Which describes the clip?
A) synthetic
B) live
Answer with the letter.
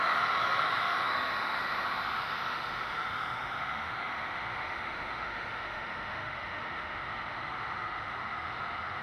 A